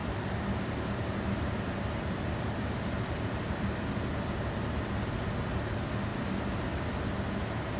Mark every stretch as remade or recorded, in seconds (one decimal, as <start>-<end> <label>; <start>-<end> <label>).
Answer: 0.0-4.1 remade; 4.1-6.1 recorded; 6.1-6.8 remade; 6.8-7.8 recorded